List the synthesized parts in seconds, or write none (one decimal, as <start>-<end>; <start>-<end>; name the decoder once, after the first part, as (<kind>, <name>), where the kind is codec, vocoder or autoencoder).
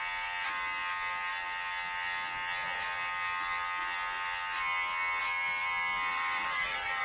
6.1-7.0 (vocoder, BigVGAN v2)